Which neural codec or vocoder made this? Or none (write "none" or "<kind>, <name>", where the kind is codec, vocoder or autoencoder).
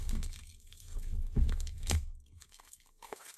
codec, SNAC